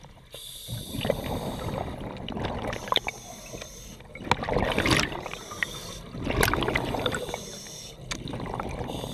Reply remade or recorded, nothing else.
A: recorded